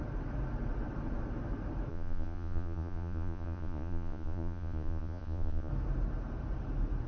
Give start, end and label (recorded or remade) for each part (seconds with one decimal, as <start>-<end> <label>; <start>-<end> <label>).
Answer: 0.0-1.9 recorded; 1.9-5.7 remade; 5.7-7.1 recorded